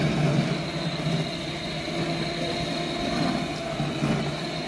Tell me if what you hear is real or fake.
real